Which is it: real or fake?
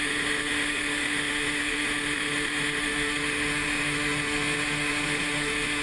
fake